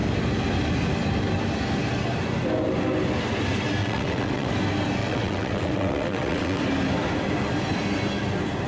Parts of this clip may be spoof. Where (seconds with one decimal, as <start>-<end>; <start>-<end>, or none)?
3.8-4.5; 5.0-6.6